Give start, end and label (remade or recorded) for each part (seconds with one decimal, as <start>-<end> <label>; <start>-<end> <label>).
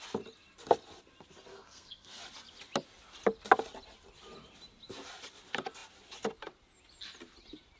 0.0-1.5 recorded; 1.5-2.2 remade; 2.2-7.8 recorded